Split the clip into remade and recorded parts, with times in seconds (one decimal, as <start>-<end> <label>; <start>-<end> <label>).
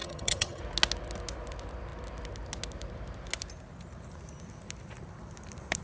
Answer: 0.0-0.6 remade; 0.6-5.8 recorded